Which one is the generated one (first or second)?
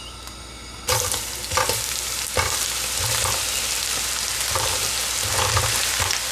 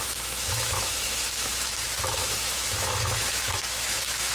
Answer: second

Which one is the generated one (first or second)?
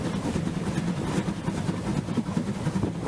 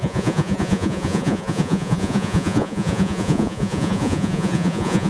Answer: second